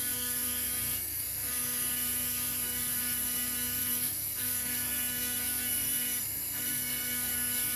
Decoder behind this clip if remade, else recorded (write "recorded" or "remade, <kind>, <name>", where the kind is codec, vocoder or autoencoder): remade, codec, SNAC